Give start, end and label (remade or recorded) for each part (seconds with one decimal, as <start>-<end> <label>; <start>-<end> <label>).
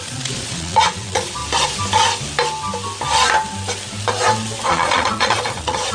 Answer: 0.0-1.4 remade; 1.4-4.7 recorded; 4.7-5.9 remade